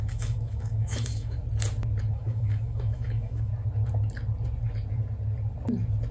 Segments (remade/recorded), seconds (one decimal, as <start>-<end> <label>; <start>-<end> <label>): 0.0-1.4 remade; 1.4-2.1 recorded; 2.1-3.5 remade; 3.5-6.1 recorded